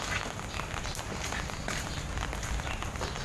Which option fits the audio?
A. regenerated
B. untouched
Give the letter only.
B